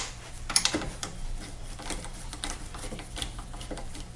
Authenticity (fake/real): fake